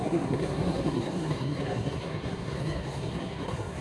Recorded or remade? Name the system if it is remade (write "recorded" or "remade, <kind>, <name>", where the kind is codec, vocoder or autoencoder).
remade, codec, SNAC